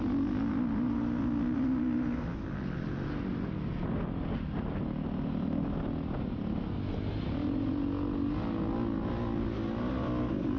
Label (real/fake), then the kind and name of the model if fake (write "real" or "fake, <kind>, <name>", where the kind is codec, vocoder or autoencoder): real